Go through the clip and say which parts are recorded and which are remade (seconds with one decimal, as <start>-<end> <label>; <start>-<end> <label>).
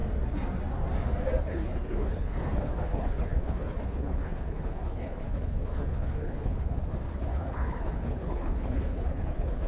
0.0-1.4 recorded; 1.4-9.7 remade